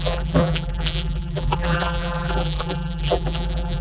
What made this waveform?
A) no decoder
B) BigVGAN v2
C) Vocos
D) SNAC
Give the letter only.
B